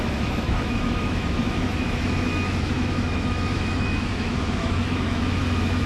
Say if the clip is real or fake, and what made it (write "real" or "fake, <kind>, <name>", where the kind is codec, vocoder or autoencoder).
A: fake, autoencoder, DAC-VAE